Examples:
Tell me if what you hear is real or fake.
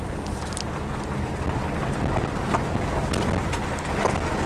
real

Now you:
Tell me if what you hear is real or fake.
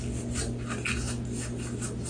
real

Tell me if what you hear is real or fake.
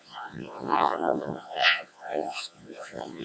fake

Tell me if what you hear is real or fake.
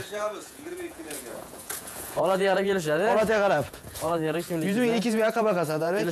fake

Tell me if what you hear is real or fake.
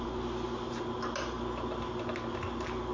real